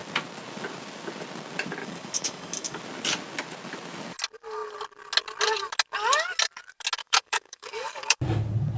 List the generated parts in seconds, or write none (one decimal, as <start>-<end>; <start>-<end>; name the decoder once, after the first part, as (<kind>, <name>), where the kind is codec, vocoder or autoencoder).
1.8-2.8 (codec, DAC); 7.0-8.2